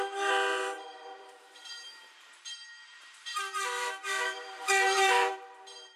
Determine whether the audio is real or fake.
fake